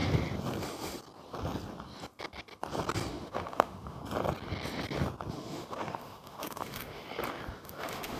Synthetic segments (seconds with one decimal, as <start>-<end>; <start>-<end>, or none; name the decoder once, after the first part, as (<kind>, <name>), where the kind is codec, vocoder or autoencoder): 3.1-4.0 (autoencoder, DAC-VAE); 5.3-7.0; 7.5-8.2